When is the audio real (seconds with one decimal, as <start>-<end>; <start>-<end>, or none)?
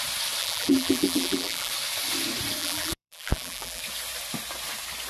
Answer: 0.0-0.4; 1.7-2.6; 3.8-5.1